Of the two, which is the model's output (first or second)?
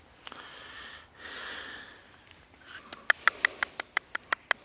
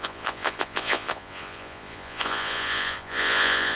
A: second